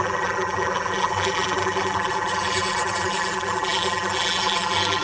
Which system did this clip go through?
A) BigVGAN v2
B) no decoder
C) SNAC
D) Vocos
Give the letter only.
A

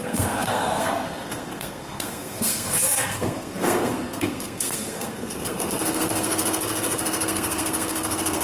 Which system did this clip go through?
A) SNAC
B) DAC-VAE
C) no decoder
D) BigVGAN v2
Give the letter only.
A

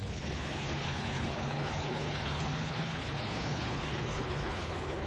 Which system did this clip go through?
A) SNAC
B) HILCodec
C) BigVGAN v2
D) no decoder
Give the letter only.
B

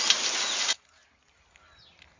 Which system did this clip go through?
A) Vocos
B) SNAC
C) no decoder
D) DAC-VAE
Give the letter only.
C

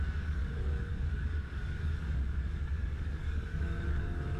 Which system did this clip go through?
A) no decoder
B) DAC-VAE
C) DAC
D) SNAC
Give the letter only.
C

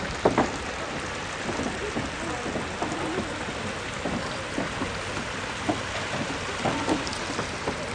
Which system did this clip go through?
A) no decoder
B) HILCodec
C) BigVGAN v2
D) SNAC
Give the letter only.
A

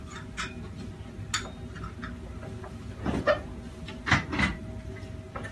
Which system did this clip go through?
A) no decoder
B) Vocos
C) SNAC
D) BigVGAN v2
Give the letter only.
A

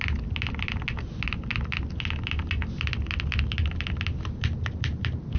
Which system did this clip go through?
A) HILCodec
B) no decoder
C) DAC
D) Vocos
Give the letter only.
B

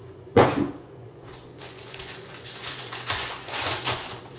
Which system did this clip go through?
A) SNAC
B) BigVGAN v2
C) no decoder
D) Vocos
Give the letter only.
D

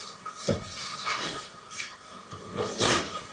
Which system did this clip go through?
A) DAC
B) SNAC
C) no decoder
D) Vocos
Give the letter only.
B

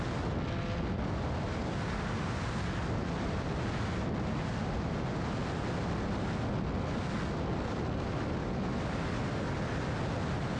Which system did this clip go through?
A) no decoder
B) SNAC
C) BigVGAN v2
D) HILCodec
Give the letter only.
A